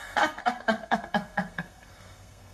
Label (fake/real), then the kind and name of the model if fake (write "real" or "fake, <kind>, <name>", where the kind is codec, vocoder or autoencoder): fake, codec, SNAC